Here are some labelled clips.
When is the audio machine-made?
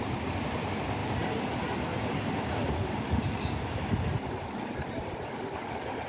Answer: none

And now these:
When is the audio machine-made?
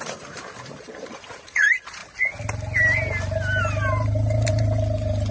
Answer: 0.0-2.0; 3.6-5.3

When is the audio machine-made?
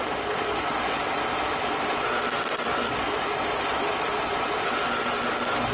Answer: 1.3-4.7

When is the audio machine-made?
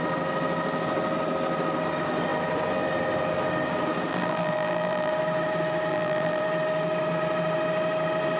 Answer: 4.1-5.1; 5.9-6.4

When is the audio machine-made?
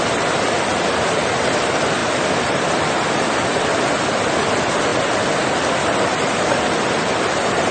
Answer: 0.0-2.0; 3.6-4.9; 6.0-7.7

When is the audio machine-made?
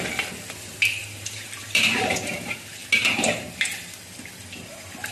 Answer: 1.0-2.1